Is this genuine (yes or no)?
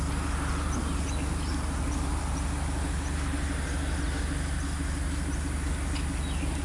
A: yes